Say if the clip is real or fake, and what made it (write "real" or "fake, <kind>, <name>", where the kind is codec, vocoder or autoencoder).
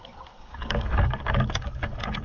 fake, codec, DAC